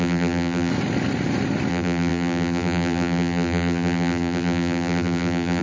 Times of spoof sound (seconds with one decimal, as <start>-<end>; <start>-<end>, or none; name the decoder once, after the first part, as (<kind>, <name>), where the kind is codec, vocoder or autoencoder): 0.0-0.7 (vocoder, BigVGAN v2); 1.7-5.6